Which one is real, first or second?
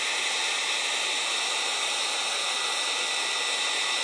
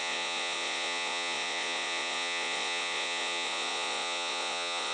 first